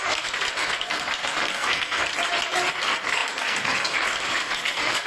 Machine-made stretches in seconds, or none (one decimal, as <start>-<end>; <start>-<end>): 0.0-2.1; 2.7-5.1